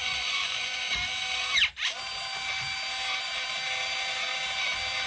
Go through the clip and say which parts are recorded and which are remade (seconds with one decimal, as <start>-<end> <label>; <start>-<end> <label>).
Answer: 0.0-0.9 remade; 0.9-5.1 recorded